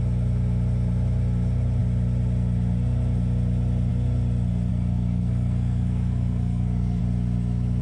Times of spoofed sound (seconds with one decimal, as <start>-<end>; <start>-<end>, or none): 4.7-7.0

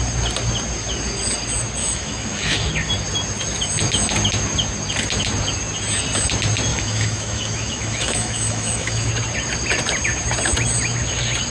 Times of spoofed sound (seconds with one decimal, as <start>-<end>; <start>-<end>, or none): 1.8-2.7; 6.7-9.1

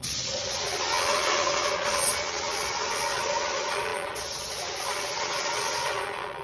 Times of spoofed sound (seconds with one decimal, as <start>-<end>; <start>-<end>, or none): 0.0-6.4

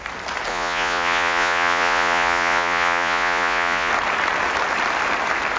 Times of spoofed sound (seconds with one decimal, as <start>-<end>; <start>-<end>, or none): 0.5-3.9

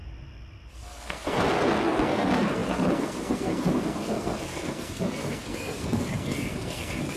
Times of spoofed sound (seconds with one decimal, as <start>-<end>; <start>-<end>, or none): 0.7-7.2